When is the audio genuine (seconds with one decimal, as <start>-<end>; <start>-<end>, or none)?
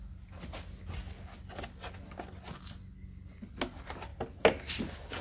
0.0-5.2